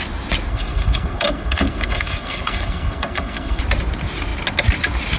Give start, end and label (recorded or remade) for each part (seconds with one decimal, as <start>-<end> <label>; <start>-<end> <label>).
0.0-0.5 recorded; 0.5-3.6 remade; 3.6-5.2 recorded